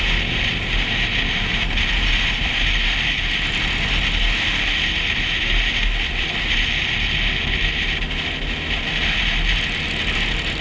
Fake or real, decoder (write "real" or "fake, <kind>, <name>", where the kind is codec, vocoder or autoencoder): real